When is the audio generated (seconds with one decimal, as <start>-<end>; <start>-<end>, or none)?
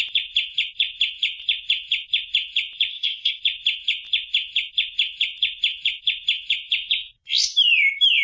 2.9-3.4